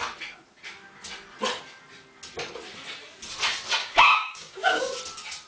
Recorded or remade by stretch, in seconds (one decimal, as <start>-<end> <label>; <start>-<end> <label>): 0.0-3.8 recorded; 3.8-4.9 remade; 4.9-5.5 recorded